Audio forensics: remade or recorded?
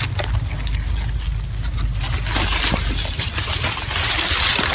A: recorded